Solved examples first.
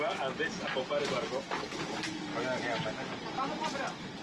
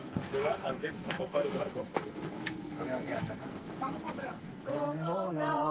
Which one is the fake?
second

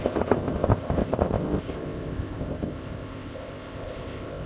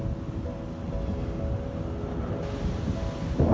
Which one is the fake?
first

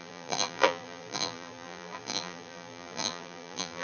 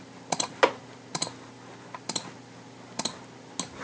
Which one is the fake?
first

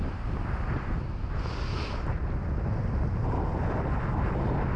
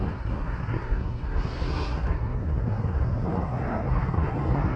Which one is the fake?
second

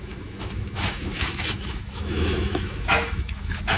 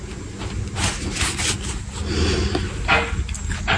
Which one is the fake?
first